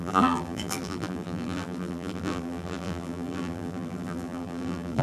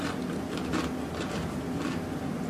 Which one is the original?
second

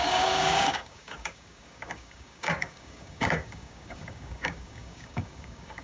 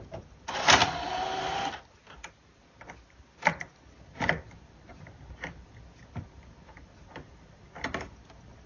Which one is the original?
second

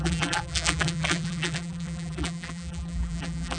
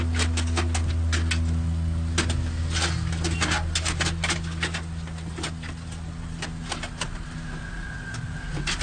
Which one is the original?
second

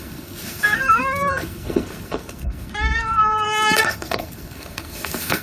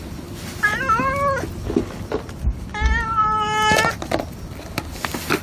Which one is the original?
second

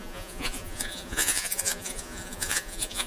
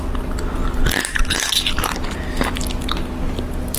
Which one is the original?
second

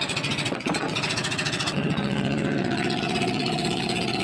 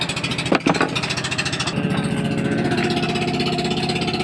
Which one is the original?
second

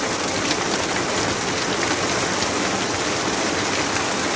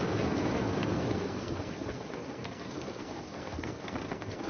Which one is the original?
first